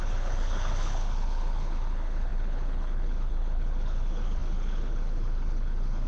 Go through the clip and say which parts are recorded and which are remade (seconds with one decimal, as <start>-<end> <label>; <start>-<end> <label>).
0.0-6.1 remade